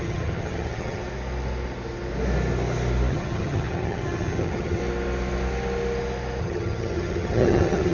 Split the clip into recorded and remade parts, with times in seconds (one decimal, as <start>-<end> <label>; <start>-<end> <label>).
0.0-1.0 remade; 1.0-3.1 recorded; 3.1-4.8 remade; 4.8-6.4 recorded; 6.4-7.9 remade